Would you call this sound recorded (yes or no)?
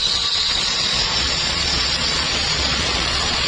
no